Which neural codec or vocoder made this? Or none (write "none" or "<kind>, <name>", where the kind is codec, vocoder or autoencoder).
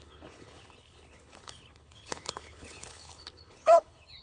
codec, HILCodec